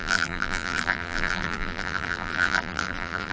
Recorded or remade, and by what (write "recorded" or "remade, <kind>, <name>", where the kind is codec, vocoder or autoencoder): remade, vocoder, BigVGAN v2